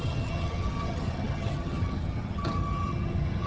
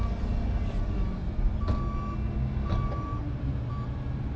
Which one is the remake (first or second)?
first